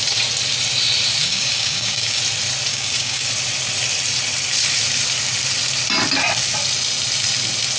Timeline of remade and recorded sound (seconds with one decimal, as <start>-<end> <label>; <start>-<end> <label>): 0.0-1.2 recorded; 1.2-2.2 remade; 2.2-2.7 recorded; 2.7-3.3 remade; 3.3-7.8 recorded